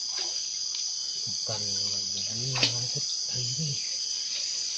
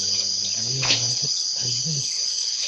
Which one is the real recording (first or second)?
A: first